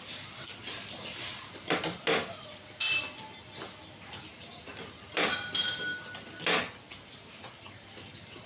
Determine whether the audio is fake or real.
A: real